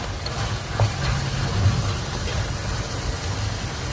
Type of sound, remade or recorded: recorded